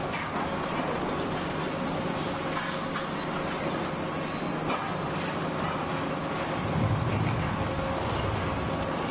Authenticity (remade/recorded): recorded